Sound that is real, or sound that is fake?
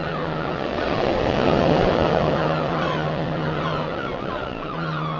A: fake